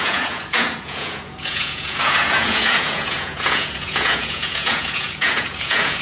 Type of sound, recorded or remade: remade